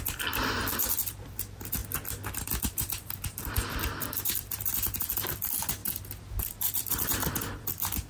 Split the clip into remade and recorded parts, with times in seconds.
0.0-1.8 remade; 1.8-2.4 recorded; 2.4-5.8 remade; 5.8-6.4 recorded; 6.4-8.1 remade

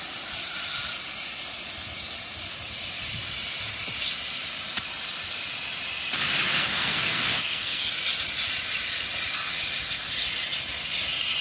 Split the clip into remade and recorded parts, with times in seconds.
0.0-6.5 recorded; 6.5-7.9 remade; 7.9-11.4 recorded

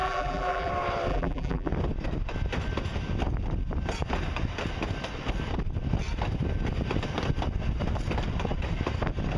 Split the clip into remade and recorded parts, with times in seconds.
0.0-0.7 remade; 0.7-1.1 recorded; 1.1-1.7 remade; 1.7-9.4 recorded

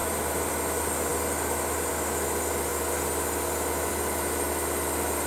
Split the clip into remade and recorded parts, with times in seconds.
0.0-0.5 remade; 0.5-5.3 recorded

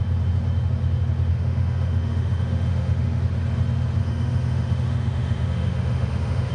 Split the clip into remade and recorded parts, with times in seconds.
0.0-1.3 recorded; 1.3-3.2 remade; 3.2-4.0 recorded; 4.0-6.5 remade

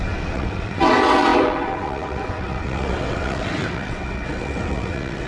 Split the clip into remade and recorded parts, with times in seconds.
0.0-5.3 remade

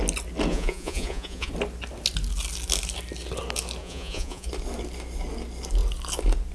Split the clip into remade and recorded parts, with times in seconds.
0.0-0.5 recorded; 0.5-1.5 remade; 1.5-3.8 recorded; 3.8-4.5 remade; 4.5-6.5 recorded

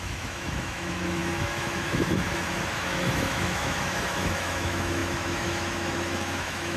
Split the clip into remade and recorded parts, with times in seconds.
0.0-6.8 remade